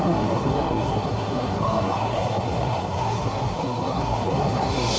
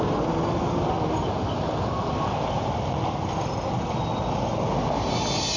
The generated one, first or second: first